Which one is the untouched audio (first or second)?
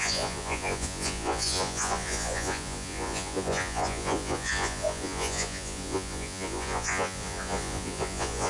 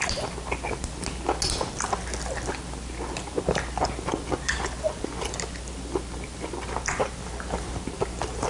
second